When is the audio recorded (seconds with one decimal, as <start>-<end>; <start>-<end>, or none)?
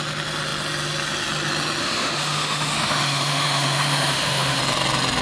0.0-1.8; 4.6-5.2